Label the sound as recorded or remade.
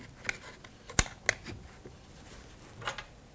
recorded